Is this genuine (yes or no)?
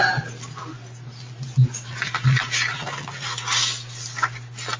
yes